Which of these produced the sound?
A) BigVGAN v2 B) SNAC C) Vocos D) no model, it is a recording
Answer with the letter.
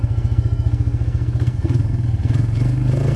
B